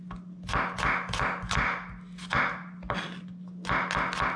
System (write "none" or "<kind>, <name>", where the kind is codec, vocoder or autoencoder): none